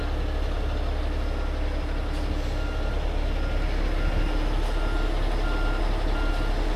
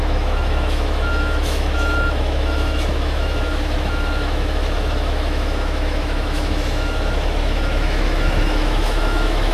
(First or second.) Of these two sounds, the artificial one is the second